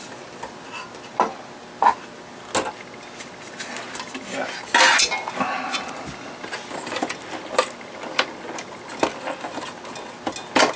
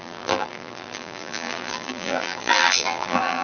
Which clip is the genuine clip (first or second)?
first